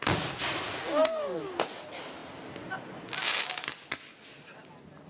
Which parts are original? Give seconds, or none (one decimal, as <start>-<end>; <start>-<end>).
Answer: 0.0-0.8; 1.4-5.1